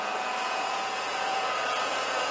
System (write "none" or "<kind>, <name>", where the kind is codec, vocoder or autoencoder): vocoder, Vocos